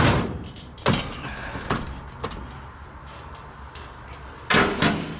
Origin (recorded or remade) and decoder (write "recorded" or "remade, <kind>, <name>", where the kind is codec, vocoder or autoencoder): recorded